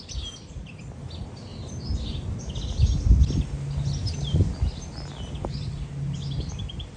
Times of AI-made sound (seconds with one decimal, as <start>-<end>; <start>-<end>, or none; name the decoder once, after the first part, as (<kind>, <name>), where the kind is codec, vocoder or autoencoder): none